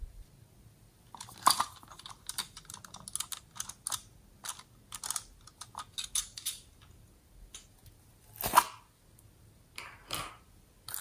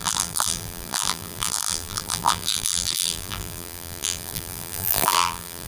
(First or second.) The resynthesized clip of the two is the second